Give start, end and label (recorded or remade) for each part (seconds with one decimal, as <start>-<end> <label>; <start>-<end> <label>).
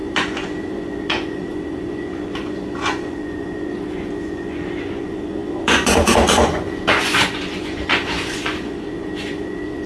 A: 0.0-9.9 remade